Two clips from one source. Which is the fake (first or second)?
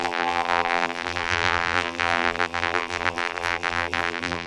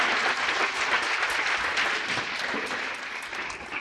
first